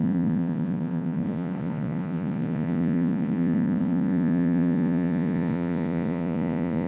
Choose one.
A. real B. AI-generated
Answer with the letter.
B